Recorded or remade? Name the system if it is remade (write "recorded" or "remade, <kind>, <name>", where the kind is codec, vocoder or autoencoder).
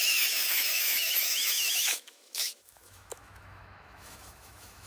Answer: remade, autoencoder, DAC-VAE